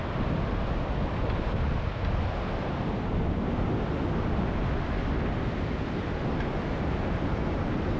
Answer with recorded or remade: recorded